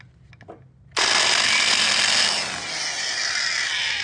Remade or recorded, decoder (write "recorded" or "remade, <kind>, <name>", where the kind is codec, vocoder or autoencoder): recorded